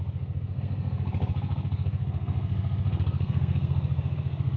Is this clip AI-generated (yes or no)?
yes